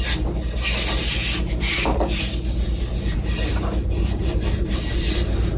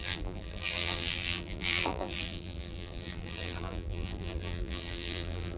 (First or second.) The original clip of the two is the first